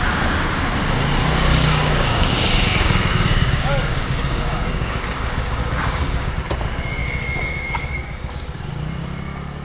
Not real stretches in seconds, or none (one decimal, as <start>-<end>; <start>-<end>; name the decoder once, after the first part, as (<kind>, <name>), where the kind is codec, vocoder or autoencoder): 1.5-6.3 (codec, DAC); 7.0-8.3